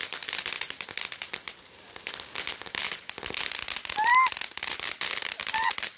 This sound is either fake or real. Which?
real